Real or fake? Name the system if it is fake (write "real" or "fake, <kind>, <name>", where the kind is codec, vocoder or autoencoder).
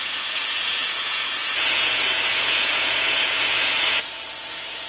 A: fake, vocoder, Vocos